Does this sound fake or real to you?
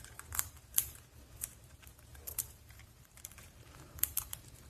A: fake